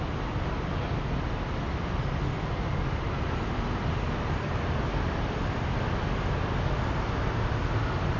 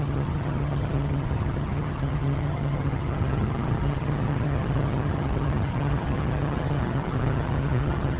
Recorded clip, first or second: first